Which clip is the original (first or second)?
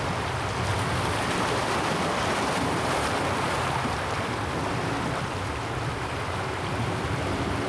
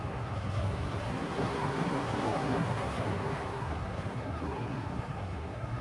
first